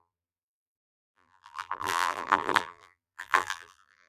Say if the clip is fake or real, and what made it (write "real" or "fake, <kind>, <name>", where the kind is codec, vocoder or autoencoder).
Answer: fake, vocoder, BigVGAN v2